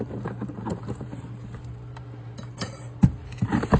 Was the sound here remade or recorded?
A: remade